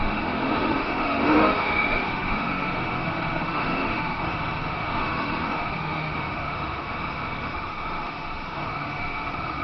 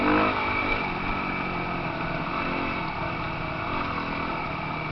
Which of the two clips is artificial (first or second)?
first